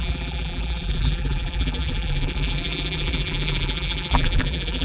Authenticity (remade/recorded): remade